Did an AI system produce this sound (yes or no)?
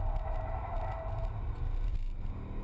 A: no